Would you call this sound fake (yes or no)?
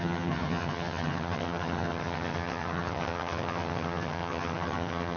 yes